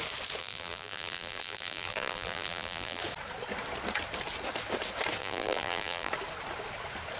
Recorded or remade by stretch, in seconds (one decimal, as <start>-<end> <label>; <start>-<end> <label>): 0.0-0.4 recorded; 0.4-3.0 remade; 3.0-5.2 recorded; 5.2-6.1 remade; 6.1-7.2 recorded

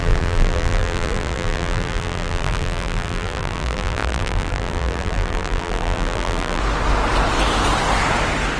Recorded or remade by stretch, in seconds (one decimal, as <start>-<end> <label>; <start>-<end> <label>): 0.0-6.6 remade; 6.6-8.6 recorded

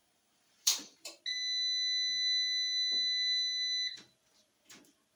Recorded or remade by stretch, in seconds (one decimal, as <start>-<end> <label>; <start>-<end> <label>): 0.0-1.2 remade; 1.2-5.2 recorded

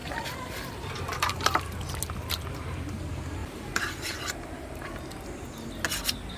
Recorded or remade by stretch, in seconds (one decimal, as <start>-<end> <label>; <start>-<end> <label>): 0.0-1.6 remade; 1.6-3.4 recorded; 3.4-5.0 remade; 5.0-6.4 recorded

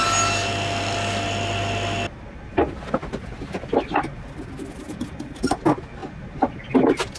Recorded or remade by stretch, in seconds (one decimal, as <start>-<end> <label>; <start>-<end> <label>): 0.0-7.2 recorded

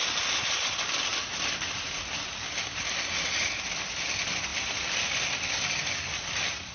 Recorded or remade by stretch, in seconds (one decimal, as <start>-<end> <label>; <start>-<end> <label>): 0.0-6.7 recorded